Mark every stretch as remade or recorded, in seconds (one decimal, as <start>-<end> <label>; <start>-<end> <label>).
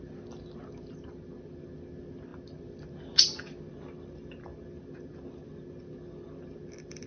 0.0-7.1 recorded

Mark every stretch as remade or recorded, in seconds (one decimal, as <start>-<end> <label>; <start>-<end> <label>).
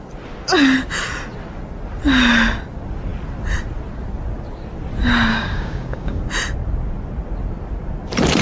0.0-5.3 recorded; 5.3-6.2 remade; 6.2-8.4 recorded